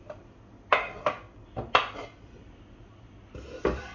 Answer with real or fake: real